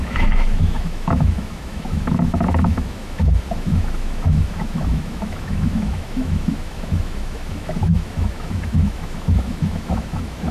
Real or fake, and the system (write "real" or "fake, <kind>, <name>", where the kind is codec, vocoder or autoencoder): fake, autoencoder, DAC-VAE